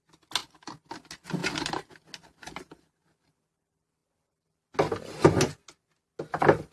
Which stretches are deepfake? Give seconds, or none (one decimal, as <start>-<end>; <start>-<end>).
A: 1.4-1.9